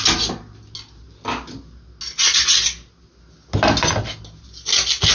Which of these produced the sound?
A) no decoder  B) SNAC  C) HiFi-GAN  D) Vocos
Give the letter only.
A